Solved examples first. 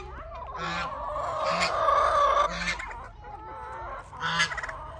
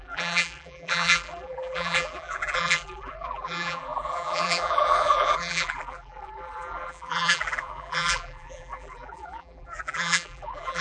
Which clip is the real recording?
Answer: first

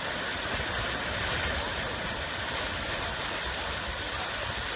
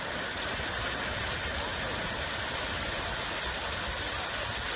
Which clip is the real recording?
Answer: second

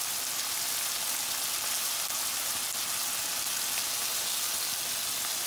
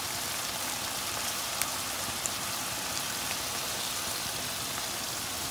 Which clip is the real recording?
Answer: first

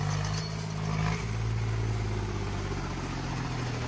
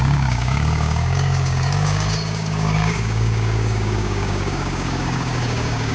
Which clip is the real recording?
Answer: first